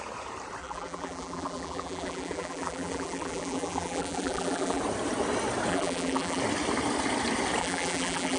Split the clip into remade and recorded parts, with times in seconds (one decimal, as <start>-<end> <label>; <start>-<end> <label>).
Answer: 0.0-0.6 recorded; 0.6-4.8 remade; 4.8-5.7 recorded; 5.7-6.4 remade; 6.4-7.6 recorded; 7.6-8.4 remade